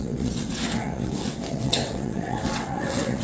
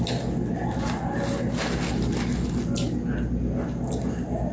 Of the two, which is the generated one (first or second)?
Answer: first